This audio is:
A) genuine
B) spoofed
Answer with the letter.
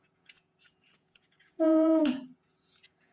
B